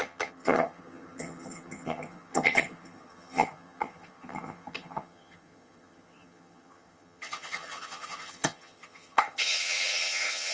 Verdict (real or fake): fake